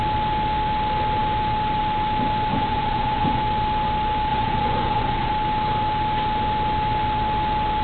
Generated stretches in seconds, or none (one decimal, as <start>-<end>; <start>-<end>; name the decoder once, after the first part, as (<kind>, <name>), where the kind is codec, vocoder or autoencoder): 2.5-3.4 (vocoder, Vocos); 4.3-5.3